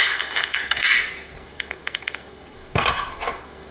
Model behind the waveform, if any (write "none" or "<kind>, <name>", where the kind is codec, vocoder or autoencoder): codec, SNAC